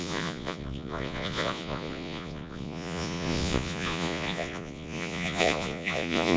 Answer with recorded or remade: remade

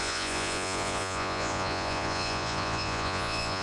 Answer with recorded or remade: remade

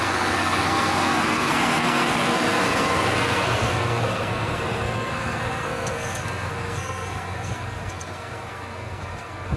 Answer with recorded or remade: remade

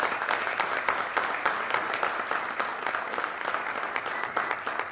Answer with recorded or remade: recorded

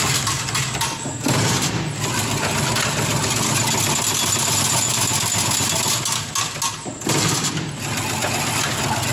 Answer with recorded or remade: recorded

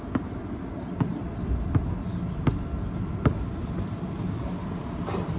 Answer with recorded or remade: recorded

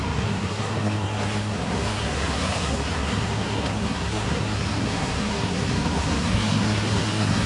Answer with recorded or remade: remade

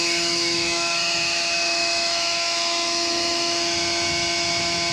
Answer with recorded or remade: remade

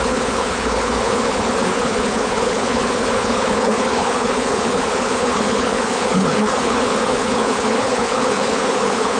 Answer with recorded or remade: remade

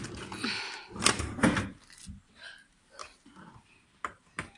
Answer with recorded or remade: recorded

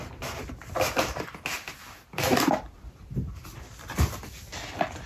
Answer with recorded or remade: recorded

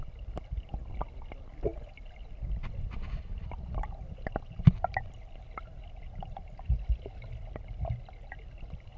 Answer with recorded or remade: recorded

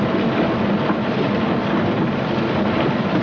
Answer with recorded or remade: recorded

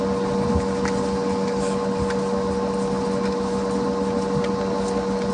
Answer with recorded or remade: recorded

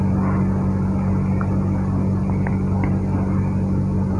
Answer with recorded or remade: recorded